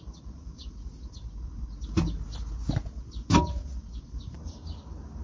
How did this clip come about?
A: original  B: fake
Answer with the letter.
A